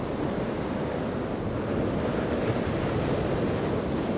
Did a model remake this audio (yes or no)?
no